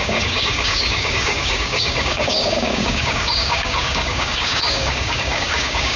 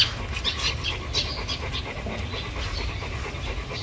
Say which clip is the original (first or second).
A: second